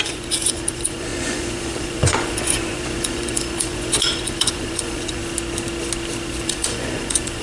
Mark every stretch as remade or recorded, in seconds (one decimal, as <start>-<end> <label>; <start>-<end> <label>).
0.0-5.2 remade; 5.2-6.4 recorded; 6.4-7.4 remade